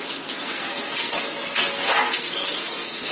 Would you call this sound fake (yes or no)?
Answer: yes